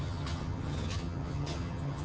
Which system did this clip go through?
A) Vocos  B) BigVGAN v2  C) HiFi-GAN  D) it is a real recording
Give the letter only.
C